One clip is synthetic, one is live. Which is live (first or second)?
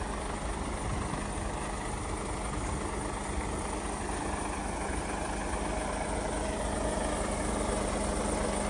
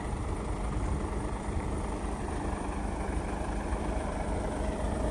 first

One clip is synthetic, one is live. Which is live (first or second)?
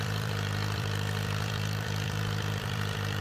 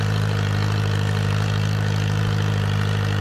second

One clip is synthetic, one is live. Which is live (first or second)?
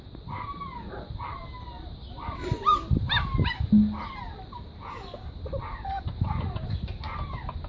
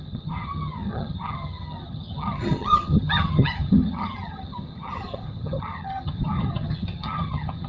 first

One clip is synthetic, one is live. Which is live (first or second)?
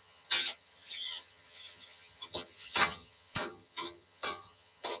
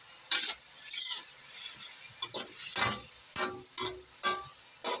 second